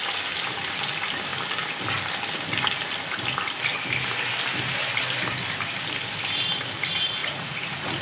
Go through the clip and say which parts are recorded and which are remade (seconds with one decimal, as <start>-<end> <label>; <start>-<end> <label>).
0.0-7.2 recorded; 7.2-8.0 remade